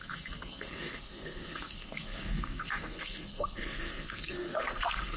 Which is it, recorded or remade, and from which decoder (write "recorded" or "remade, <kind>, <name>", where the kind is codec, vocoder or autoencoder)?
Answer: remade, codec, SNAC